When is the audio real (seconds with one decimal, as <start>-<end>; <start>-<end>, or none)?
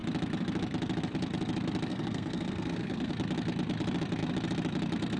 0.0-1.9; 3.1-5.2